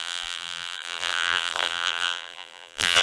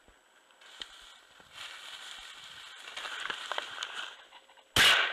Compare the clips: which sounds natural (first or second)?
second